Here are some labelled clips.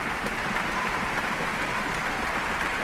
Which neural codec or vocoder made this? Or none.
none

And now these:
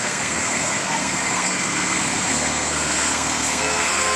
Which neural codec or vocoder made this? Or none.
codec, SNAC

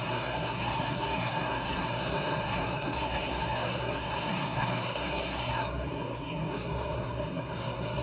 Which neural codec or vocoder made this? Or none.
codec, SNAC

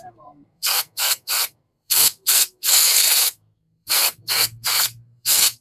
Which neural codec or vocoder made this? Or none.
codec, SNAC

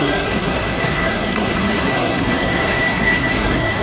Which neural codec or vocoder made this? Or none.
codec, SNAC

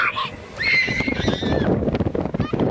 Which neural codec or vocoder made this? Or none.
none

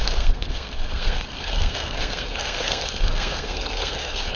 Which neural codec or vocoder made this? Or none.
codec, SNAC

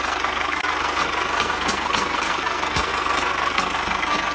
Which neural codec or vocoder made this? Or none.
codec, SNAC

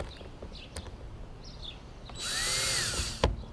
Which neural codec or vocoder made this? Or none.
none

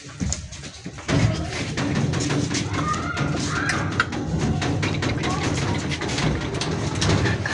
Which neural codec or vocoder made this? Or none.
none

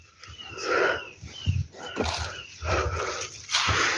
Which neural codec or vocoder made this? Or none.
none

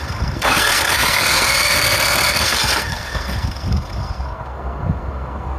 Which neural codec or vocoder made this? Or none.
codec, SNAC